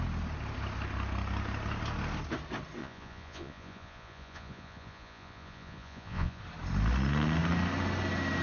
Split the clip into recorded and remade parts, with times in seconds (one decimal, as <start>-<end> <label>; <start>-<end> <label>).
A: 0.0-2.8 recorded; 2.8-6.4 remade; 6.4-8.4 recorded